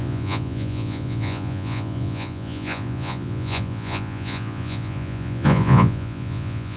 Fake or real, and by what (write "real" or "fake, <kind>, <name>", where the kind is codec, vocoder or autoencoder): fake, vocoder, Vocos